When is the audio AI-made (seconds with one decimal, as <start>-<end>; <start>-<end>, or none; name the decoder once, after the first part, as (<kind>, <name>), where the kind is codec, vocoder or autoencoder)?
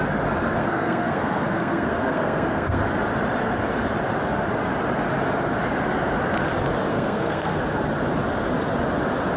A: 0.6-2.8 (codec, SNAC); 6.9-7.6